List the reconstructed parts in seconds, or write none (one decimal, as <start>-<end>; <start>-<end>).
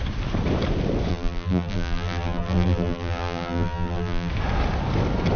1.1-4.3